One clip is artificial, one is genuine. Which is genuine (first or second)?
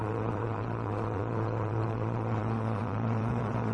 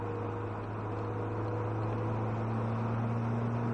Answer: second